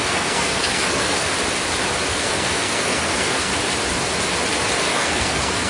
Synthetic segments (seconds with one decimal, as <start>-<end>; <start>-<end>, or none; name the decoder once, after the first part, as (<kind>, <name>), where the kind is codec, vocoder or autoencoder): 0.0-1.3 (codec, SNAC); 2.1-3.5; 4.8-5.7